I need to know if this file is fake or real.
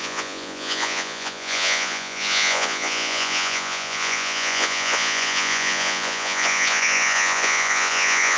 fake